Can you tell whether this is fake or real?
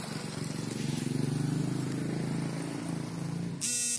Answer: real